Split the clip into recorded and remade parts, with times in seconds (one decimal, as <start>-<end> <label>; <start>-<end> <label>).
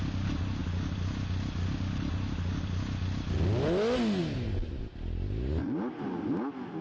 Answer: 0.0-6.8 recorded